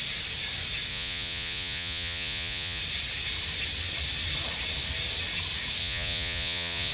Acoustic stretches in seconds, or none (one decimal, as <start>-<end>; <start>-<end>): 0.0-0.9; 2.8-5.8